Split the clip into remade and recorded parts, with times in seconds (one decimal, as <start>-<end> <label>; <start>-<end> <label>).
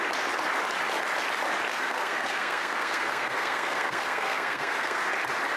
0.0-1.7 recorded; 1.7-5.1 remade; 5.1-5.6 recorded